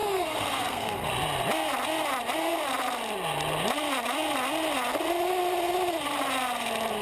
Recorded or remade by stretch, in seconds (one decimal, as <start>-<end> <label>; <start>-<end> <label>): 0.0-1.1 remade; 1.1-7.0 recorded